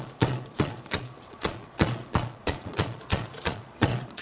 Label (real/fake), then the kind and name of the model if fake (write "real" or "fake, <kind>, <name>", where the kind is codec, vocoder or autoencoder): fake, vocoder, Vocos